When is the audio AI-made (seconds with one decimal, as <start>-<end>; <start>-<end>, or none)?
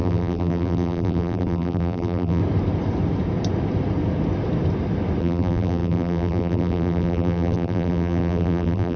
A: 0.0-2.4; 5.2-9.0